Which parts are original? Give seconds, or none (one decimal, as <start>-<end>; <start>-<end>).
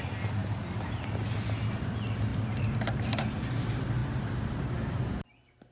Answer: 0.0-5.7